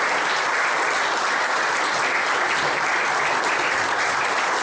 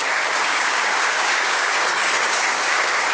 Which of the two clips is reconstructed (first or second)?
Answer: second